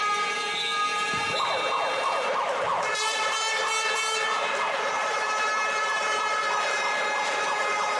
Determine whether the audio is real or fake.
fake